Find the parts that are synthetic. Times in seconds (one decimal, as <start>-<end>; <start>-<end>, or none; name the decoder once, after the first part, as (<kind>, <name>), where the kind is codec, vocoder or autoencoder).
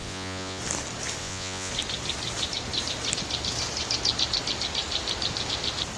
0.0-0.6 (vocoder, Vocos); 1.2-1.7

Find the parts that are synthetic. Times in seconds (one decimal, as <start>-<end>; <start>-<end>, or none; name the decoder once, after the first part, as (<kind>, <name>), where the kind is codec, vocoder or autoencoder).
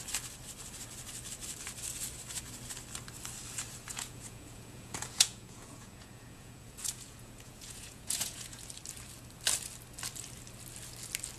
3.9-8.6 (vocoder, Vocos)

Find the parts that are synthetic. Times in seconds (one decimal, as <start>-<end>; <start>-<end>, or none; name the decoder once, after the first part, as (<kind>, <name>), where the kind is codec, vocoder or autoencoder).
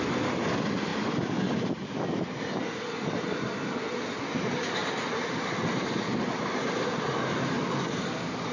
none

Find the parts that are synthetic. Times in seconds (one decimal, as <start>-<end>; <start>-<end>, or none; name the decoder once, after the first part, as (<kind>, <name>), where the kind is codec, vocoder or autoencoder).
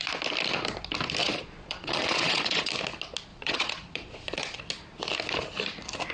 1.2-2.7 (vocoder, Vocos); 3.3-4.6